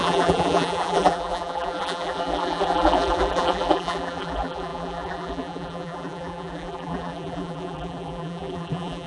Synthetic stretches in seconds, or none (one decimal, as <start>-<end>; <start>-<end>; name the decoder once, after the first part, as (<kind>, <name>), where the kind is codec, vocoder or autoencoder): 0.0-9.1 (vocoder, BigVGAN v2)